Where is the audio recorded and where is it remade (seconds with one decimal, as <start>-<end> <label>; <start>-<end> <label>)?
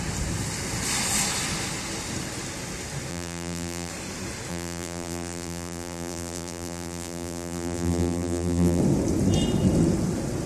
0.0-3.1 recorded; 3.1-3.9 remade; 3.9-4.5 recorded; 4.5-8.8 remade; 8.8-10.5 recorded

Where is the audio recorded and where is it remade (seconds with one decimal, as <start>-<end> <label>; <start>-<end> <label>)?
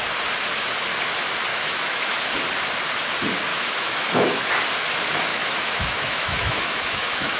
0.0-1.5 recorded; 1.5-2.2 remade; 2.2-3.5 recorded; 3.5-4.5 remade; 4.5-5.3 recorded; 5.3-7.4 remade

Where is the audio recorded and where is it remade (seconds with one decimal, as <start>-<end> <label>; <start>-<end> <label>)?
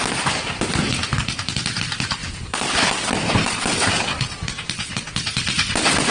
0.0-6.1 recorded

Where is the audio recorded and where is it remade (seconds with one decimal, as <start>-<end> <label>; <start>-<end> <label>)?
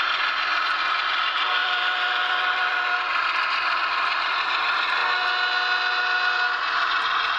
0.0-1.6 recorded; 1.6-3.8 remade; 3.8-7.4 recorded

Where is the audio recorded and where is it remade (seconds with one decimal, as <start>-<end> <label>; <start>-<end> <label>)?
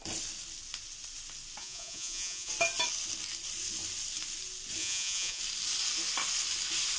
0.0-1.6 recorded; 1.6-2.5 remade; 2.5-4.8 recorded; 4.8-5.4 remade; 5.4-7.0 recorded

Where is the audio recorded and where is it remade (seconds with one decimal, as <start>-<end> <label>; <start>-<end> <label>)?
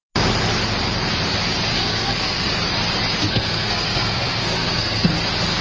0.0-1.7 recorded; 1.7-2.5 remade; 2.5-3.3 recorded; 3.3-5.1 remade; 5.1-5.6 recorded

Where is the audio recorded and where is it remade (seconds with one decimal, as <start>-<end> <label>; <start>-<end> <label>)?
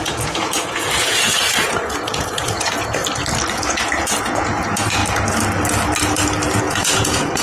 0.0-3.0 remade; 3.0-3.5 recorded; 3.5-5.0 remade; 5.0-6.6 recorded; 6.6-7.4 remade